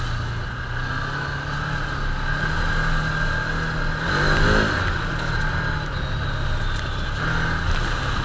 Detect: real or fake real